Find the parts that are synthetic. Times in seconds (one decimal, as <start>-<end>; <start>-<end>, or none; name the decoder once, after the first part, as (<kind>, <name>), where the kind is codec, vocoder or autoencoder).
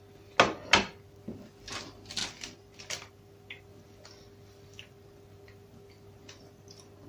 2.2-3.1 (vocoder, BigVGAN v2)